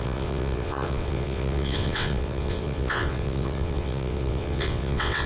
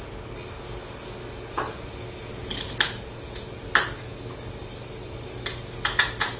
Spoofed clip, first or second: first